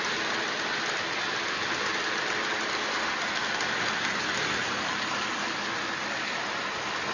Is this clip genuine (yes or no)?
yes